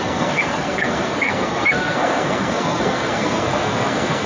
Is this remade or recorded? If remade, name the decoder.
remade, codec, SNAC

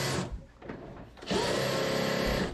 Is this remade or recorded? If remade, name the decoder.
recorded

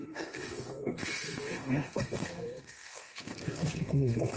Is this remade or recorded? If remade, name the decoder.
remade, codec, SNAC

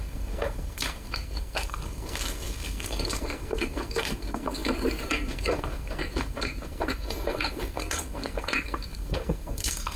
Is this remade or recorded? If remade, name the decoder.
remade, codec, SNAC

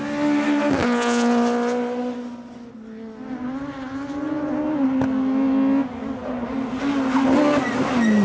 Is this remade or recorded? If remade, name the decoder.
recorded